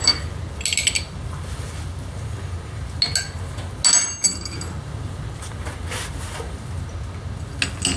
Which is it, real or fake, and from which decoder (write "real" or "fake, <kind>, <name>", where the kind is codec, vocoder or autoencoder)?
real